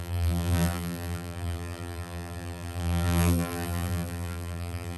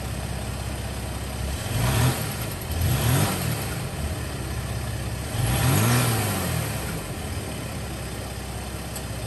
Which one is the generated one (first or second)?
first